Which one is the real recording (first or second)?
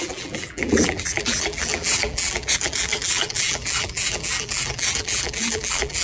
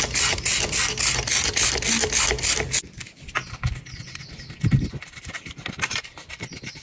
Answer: second